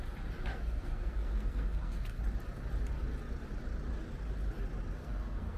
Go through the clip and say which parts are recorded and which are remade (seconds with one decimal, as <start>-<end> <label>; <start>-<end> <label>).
0.0-0.5 recorded; 0.5-2.2 remade; 2.2-5.0 recorded; 5.0-5.6 remade